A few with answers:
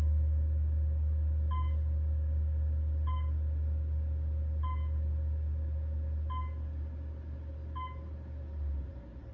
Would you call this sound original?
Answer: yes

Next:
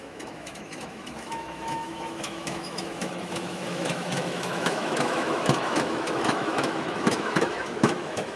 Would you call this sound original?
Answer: no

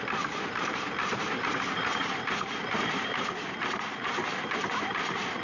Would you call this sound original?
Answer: no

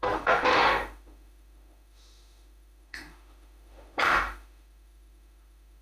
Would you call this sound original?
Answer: no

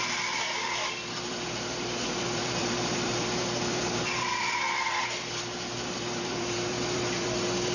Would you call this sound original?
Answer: no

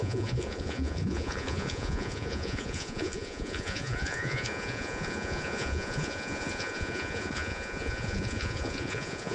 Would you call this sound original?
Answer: no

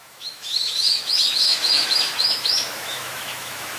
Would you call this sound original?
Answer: no